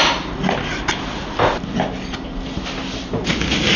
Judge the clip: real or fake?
real